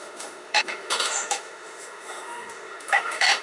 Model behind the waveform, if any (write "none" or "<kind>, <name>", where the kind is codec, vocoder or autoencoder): autoencoder, DAC-VAE